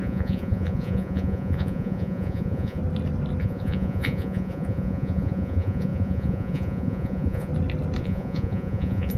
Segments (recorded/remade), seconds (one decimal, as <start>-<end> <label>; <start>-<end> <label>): 0.0-2.8 remade; 2.8-3.4 recorded; 3.4-7.5 remade; 7.5-8.0 recorded; 8.0-9.2 remade